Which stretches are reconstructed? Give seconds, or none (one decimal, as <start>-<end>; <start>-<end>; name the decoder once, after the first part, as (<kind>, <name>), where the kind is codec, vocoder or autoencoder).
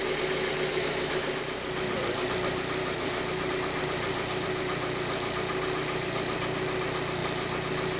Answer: 0.7-1.4 (autoencoder, DAC-VAE); 2.8-3.5